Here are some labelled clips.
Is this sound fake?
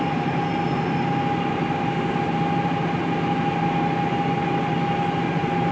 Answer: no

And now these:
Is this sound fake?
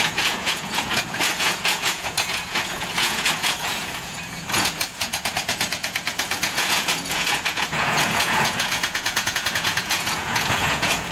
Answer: yes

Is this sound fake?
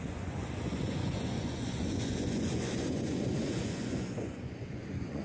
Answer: yes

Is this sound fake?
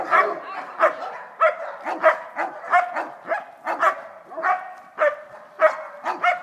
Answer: no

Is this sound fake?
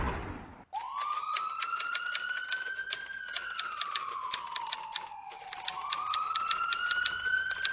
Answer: no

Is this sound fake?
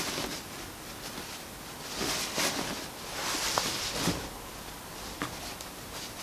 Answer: no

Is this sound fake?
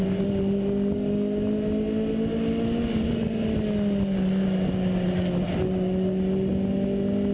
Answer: no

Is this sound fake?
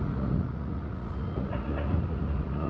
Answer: yes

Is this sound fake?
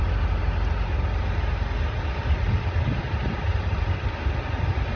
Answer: no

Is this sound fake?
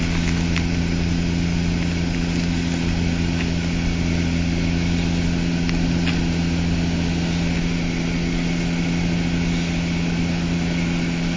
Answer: no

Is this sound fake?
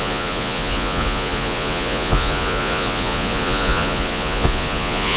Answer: yes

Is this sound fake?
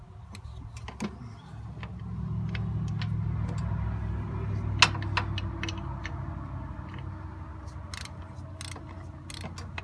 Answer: no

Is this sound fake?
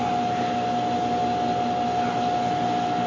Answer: no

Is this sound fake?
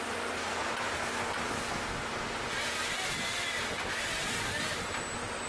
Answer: no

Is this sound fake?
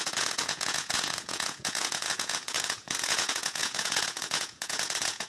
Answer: yes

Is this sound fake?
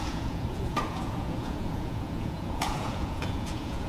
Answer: yes